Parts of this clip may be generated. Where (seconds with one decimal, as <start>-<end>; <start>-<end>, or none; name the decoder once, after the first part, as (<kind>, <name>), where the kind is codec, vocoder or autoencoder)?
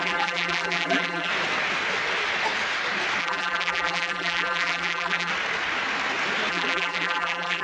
0.0-1.3 (vocoder, BigVGAN v2); 3.2-5.3; 6.5-7.6